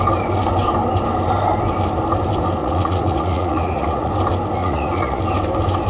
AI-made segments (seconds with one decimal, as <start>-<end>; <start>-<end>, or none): 2.6-4.1; 4.6-5.2